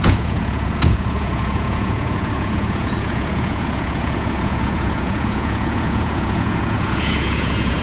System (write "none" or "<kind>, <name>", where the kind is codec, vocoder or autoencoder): vocoder, Vocos